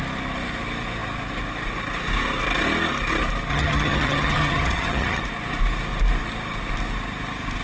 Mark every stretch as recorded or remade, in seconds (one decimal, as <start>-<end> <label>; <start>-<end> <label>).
0.0-3.5 recorded; 3.5-5.2 remade; 5.2-7.6 recorded